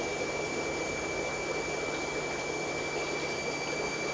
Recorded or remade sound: recorded